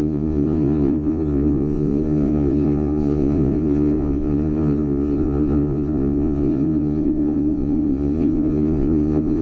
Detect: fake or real fake